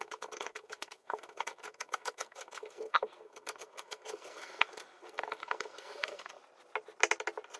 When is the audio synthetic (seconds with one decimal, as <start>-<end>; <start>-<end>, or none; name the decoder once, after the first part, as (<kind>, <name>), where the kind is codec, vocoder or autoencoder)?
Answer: 0.0-6.4 (codec, SNAC)

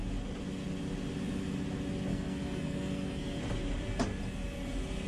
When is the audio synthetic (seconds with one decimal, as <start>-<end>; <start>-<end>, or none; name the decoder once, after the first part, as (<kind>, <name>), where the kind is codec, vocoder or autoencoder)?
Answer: 2.1-3.4 (codec, SNAC)

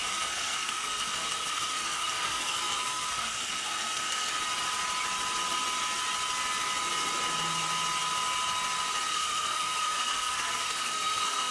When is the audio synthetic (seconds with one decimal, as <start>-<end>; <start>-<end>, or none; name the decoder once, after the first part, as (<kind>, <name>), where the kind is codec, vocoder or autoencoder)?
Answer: 0.0-4.3 (codec, SNAC); 9.1-11.5

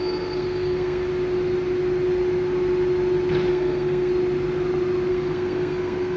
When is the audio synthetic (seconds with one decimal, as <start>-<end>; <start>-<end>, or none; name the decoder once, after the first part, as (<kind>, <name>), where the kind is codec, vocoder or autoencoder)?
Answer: 0.0-1.1 (codec, SNAC); 3.5-4.1; 5.1-6.2

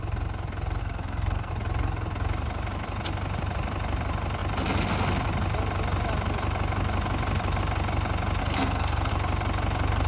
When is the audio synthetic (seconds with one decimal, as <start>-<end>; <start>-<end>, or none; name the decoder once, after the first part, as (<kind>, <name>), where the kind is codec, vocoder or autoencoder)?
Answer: 0.8-1.5 (codec, SNAC); 8.4-9.1

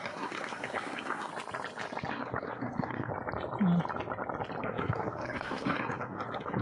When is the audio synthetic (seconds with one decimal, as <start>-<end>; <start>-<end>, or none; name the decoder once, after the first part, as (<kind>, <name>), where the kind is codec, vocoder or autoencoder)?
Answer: 0.0-1.3 (codec, SNAC); 2.1-3.1; 4.6-6.6

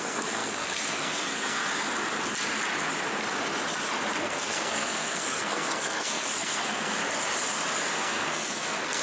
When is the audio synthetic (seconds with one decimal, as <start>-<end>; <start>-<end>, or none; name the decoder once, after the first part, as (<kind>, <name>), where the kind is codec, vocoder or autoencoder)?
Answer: 0.0-1.6 (codec, SNAC); 4.2-7.0; 7.8-9.0

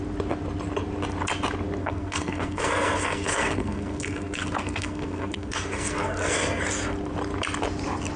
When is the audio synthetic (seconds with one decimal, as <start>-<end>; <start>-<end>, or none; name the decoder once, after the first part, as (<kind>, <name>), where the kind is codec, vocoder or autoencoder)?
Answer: 1.8-6.6 (codec, SNAC)